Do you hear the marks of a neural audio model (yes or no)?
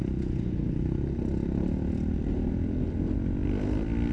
no